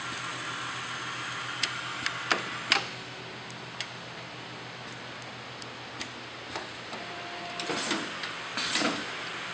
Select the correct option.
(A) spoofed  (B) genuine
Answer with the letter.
B